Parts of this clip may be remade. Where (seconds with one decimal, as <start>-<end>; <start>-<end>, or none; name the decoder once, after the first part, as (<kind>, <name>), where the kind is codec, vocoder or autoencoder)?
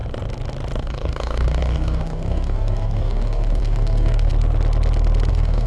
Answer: 0.8-4.3 (codec, DAC); 5.3-5.7